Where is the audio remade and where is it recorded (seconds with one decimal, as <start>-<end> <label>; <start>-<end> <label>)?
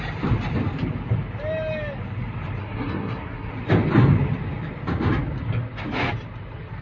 0.0-2.6 recorded; 2.6-3.5 remade; 3.5-6.8 recorded